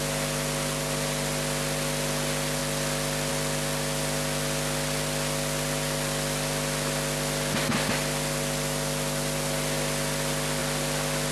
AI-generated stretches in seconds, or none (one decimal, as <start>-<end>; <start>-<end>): none